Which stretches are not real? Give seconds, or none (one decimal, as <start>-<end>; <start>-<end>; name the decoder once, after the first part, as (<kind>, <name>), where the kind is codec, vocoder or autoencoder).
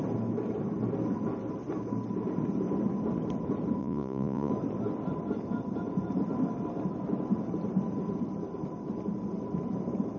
3.8-4.5 (vocoder, Vocos)